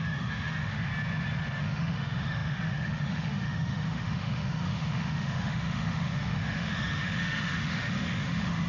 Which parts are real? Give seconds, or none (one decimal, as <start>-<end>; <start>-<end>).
0.9-1.6